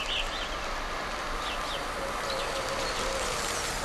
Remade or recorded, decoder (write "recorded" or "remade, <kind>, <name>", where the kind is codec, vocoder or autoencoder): recorded